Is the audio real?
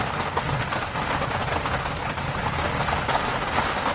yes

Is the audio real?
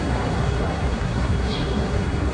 no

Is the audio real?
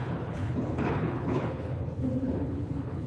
no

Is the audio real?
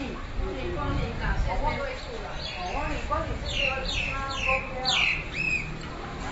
yes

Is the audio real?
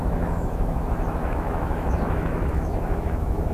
no